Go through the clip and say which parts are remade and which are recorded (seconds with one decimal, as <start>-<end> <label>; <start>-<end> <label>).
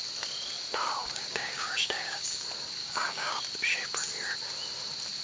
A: 0.0-1.0 recorded; 1.0-2.4 remade; 2.4-2.8 recorded; 2.8-3.4 remade; 3.4-5.2 recorded